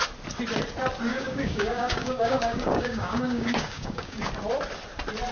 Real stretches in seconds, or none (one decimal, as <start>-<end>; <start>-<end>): 0.0-1.1; 4.3-5.3